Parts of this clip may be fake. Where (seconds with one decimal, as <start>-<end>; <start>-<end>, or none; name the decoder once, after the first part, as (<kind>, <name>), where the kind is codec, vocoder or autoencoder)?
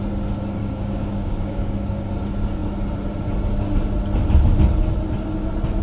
0.6-2.1 (codec, DAC)